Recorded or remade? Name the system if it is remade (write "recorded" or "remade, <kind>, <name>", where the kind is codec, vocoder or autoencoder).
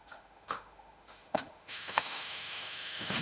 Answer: remade, autoencoder, DAC-VAE